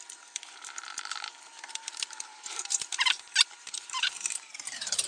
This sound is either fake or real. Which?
fake